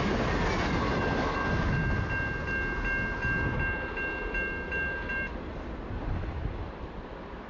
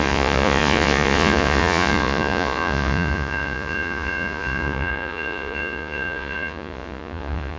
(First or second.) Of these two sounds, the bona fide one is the first